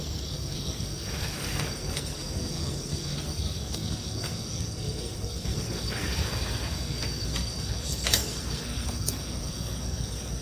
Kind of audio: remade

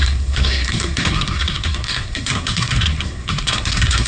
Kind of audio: remade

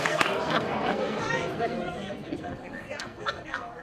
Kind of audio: remade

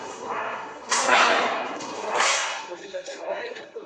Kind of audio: remade